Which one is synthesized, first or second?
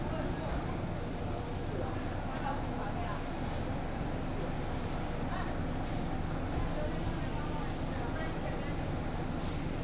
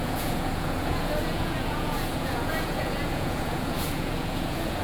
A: second